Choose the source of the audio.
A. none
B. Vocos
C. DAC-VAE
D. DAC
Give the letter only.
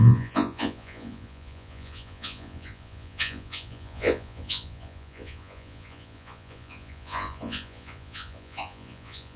B